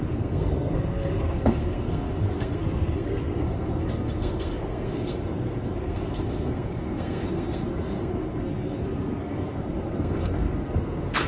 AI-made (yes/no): yes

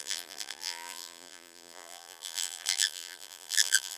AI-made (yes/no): yes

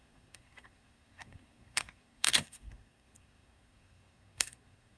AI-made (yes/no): yes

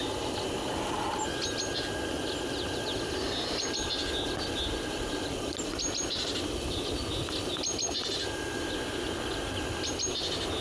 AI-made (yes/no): no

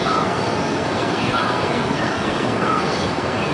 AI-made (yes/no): yes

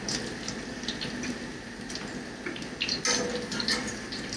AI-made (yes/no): no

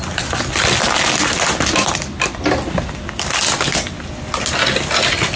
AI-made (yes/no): no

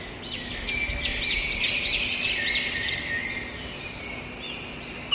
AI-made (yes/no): no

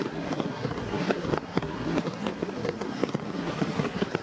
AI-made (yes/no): yes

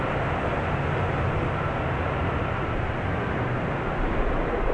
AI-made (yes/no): no